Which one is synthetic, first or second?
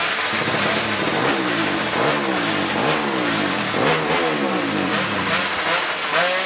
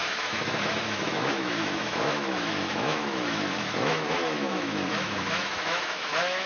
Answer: second